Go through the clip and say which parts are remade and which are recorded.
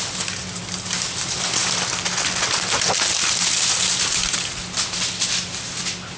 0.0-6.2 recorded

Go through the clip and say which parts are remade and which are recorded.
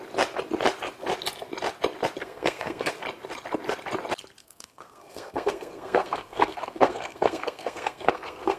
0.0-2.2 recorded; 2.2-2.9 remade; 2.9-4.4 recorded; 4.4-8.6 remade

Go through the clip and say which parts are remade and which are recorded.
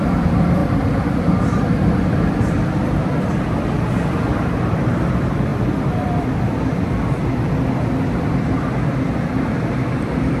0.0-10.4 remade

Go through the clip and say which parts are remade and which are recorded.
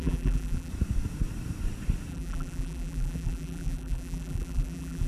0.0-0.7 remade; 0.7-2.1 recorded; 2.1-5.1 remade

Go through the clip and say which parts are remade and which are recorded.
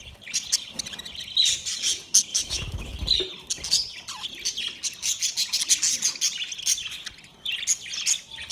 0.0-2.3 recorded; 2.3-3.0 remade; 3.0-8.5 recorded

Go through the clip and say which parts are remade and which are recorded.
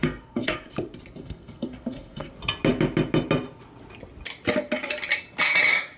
0.0-0.7 remade; 0.7-1.2 recorded; 1.2-2.3 remade; 2.3-6.0 recorded